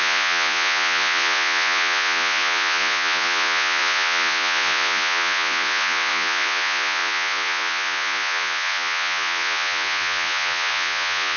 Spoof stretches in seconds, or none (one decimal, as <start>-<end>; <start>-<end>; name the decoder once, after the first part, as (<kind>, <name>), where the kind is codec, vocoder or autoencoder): 0.0-11.4 (vocoder, Vocos)